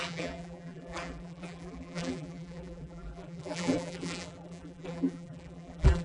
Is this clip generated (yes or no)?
yes